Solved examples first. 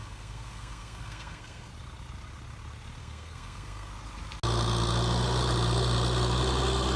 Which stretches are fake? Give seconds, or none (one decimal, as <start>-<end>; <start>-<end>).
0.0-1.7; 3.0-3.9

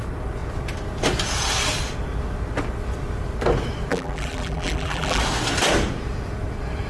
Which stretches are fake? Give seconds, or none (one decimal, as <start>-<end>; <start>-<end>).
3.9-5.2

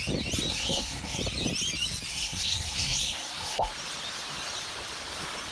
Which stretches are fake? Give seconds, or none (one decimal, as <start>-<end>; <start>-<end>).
0.5-1.2; 2.1-3.7

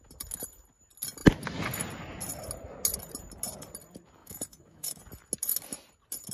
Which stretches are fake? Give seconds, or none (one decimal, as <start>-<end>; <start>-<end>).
4.2-5.0

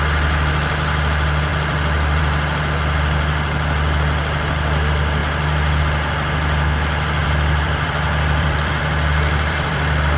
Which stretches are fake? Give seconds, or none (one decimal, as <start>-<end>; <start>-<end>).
1.5-2.2; 7.2-10.2

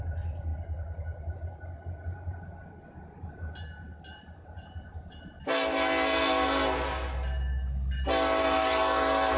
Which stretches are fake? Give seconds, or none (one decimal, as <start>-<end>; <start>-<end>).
none